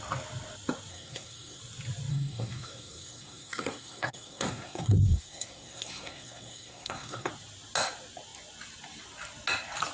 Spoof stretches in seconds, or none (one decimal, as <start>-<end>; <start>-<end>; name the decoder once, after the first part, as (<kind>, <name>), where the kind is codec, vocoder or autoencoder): 0.9-1.6 (codec, SNAC); 2.1-7.3